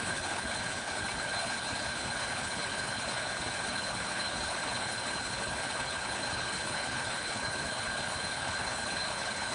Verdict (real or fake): fake